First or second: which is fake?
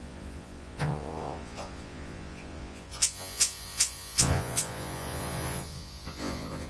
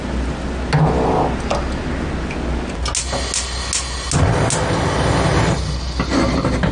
first